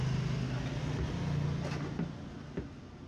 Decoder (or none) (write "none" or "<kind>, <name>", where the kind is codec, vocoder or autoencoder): none